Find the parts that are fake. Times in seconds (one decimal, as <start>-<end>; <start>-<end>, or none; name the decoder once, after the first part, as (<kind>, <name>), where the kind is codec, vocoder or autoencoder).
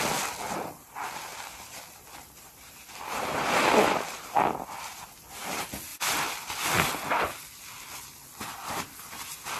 1.3-5.2 (vocoder, BigVGAN v2); 5.9-6.9